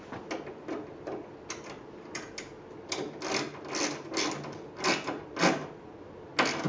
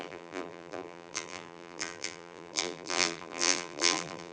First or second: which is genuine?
first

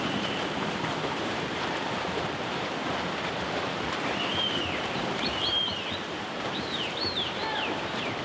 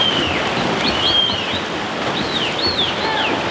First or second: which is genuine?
second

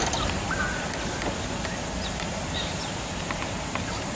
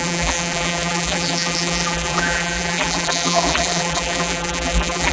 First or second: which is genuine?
first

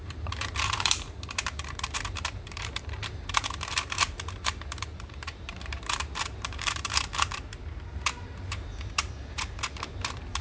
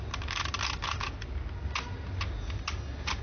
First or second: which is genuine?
second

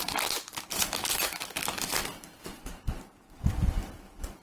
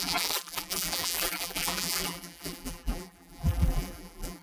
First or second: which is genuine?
first